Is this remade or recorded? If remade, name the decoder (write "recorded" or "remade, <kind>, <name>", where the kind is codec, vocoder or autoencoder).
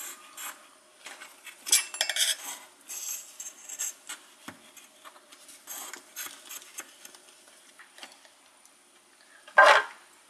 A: recorded